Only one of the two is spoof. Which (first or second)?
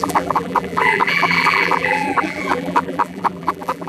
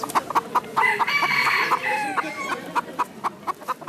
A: first